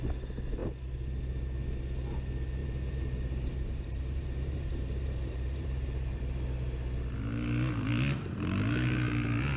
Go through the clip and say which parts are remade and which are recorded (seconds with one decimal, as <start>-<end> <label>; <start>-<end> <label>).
0.0-2.6 recorded; 2.6-6.2 remade; 6.2-9.6 recorded